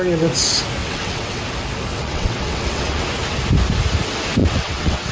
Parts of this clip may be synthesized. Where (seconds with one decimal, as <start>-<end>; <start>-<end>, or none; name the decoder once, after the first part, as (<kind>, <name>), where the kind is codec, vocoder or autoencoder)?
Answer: 0.8-1.4 (vocoder, WaveNeXt); 1.9-3.0; 4.4-5.1